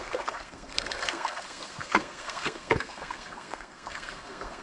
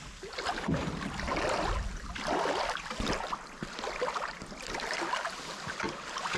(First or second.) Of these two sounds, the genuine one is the second